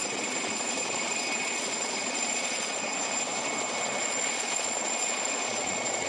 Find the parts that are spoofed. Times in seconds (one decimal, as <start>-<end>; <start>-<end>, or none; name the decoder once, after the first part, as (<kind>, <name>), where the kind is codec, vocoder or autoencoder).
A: 0.0-2.9 (vocoder, Vocos); 4.0-6.1